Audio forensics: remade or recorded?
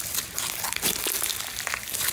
recorded